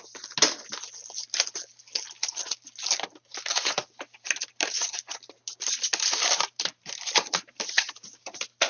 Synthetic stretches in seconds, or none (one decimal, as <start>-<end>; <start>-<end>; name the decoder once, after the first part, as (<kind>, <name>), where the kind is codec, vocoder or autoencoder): 3.5-8.0 (vocoder, BigVGAN v2)